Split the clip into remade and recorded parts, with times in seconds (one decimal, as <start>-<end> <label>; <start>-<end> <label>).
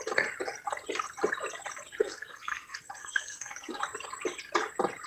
0.0-2.0 recorded; 2.0-3.8 remade; 3.8-5.1 recorded